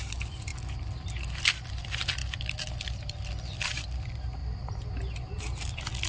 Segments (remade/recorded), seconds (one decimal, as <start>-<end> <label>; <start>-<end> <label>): 0.0-6.1 recorded